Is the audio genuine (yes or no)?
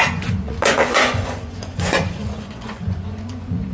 no